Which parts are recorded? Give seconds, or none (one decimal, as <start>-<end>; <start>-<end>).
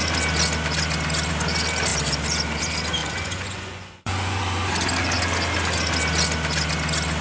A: 0.0-3.0; 4.4-7.2